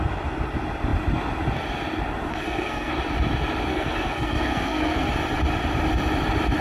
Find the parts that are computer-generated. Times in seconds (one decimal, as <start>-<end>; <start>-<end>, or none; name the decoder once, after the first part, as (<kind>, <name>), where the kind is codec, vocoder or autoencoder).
2.3-2.9 (codec, SNAC); 3.7-5.1